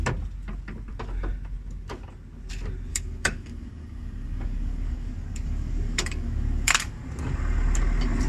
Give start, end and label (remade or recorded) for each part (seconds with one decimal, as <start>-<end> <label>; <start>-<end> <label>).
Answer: 0.0-2.9 recorded; 2.9-7.0 remade; 7.0-8.3 recorded